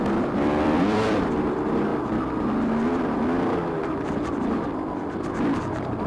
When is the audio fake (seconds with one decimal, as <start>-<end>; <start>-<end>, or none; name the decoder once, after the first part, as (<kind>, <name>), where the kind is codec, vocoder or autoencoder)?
0.0-1.9 (vocoder, BigVGAN v2); 2.9-6.1